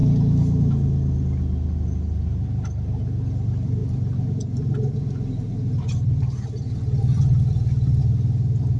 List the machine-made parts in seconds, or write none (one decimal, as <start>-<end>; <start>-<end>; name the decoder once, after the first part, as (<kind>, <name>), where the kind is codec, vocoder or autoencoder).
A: 3.3-8.8 (vocoder, BigVGAN v2)